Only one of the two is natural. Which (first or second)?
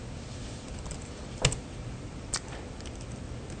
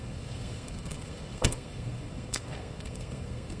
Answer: first